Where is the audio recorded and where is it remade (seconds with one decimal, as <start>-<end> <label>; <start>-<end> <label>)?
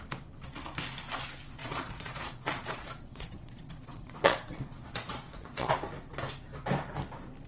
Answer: 0.0-1.6 recorded; 1.6-5.7 remade; 5.7-7.5 recorded